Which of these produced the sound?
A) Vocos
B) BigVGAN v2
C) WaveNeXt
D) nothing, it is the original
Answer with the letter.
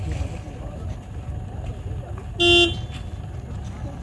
D